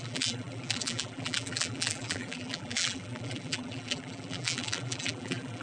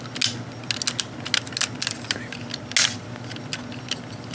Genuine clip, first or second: second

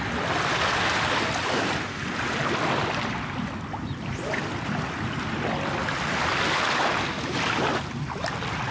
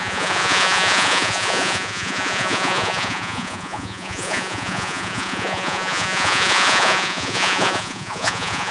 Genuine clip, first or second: first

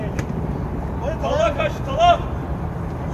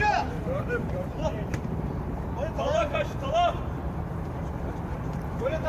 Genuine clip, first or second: first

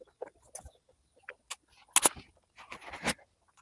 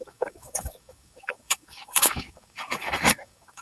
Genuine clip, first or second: first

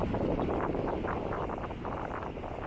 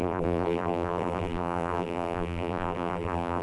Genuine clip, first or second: first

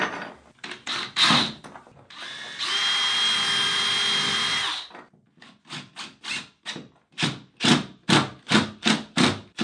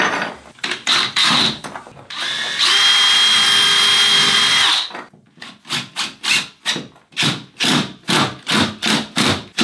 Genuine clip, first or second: first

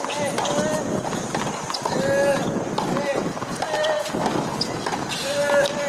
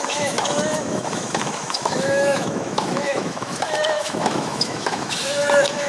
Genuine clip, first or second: first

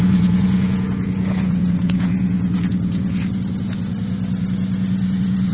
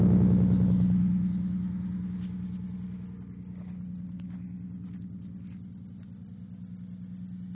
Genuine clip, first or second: second